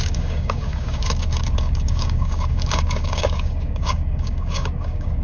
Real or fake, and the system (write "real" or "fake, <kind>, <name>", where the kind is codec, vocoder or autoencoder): fake, codec, DAC